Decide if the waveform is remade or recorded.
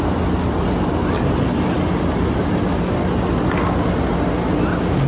recorded